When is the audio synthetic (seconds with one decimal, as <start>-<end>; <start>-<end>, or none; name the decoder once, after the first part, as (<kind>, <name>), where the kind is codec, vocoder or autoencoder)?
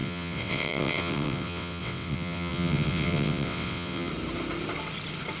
0.0-4.1 (vocoder, WaveNeXt)